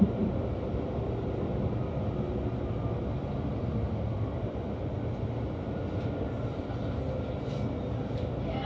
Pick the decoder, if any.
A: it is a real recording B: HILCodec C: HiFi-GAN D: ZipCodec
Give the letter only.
A